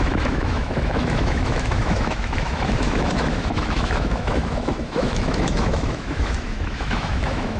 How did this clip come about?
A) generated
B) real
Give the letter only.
A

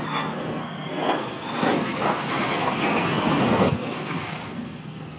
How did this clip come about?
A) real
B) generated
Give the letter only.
B